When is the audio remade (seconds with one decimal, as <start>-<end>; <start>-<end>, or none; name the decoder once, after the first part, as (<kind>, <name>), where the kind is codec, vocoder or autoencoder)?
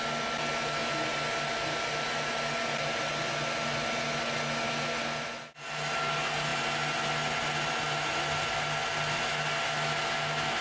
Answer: none